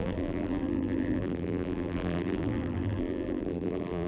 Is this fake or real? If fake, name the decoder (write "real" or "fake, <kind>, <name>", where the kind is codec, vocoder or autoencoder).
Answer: fake, vocoder, BigVGAN v2